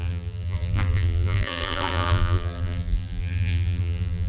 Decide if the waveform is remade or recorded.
remade